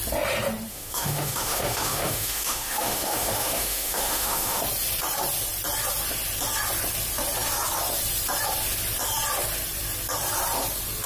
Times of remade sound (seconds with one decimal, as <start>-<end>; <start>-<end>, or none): 0.7-4.6